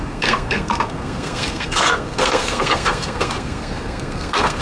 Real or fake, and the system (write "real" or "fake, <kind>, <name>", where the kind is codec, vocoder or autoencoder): fake, codec, SNAC